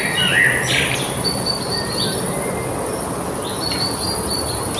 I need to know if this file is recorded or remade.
recorded